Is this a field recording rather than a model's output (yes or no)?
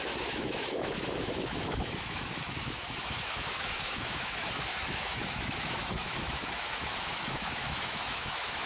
no